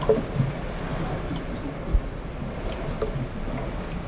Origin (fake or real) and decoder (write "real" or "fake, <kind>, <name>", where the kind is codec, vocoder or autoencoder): real